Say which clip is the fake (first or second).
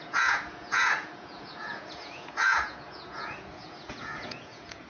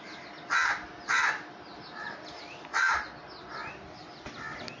first